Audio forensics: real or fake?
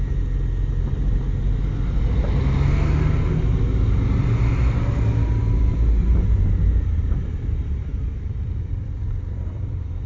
real